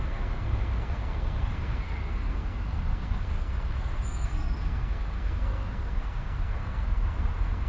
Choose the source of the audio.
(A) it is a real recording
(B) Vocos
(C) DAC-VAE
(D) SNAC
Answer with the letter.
D